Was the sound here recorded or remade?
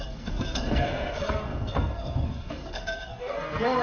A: remade